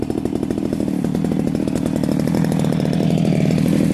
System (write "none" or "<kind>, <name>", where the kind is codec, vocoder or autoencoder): none